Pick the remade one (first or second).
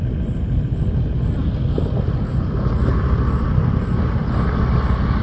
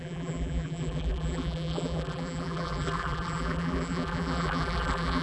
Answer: second